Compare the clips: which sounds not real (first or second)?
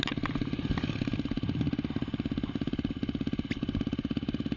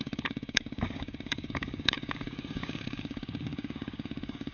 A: second